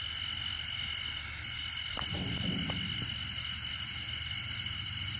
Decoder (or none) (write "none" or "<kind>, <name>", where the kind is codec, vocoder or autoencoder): none